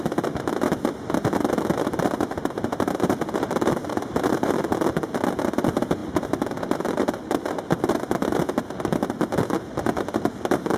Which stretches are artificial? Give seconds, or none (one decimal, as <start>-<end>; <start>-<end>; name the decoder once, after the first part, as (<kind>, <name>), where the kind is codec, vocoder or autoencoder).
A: 3.8-4.7 (vocoder, BigVGAN v2)